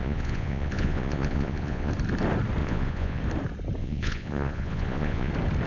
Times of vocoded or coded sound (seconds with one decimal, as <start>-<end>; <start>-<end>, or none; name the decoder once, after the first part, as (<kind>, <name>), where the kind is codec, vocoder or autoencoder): 0.0-1.9 (vocoder, Vocos); 2.6-3.2; 3.8-5.3